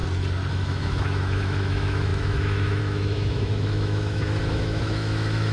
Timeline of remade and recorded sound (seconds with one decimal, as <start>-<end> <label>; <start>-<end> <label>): 0.0-0.5 recorded; 0.5-5.5 remade